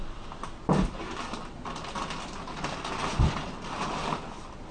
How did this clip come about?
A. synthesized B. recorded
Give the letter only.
B